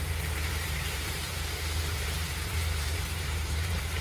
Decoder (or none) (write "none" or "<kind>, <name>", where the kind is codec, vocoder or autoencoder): vocoder, BigVGAN v2